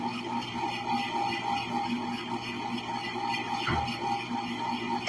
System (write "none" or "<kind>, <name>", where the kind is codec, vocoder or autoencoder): none